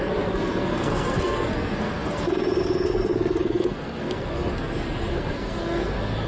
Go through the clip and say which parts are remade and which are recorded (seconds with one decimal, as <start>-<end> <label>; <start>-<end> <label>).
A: 0.0-6.3 remade